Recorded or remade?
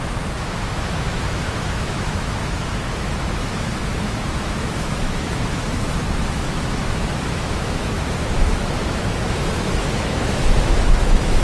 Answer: remade